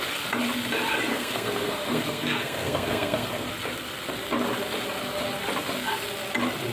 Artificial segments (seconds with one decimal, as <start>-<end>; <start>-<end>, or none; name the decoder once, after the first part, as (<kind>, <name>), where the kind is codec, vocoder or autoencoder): 1.1-3.5 (codec, SNAC)